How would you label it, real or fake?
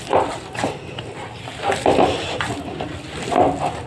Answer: real